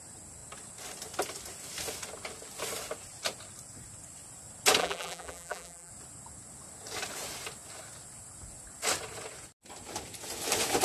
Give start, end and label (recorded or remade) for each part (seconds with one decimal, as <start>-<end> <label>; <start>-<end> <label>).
0.0-4.8 recorded; 4.8-5.9 remade; 5.9-10.8 recorded